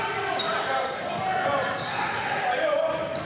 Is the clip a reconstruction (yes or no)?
no